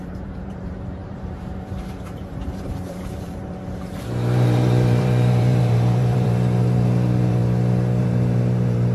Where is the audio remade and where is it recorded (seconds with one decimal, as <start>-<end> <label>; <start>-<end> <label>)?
0.0-7.4 remade; 7.4-8.0 recorded; 8.0-8.9 remade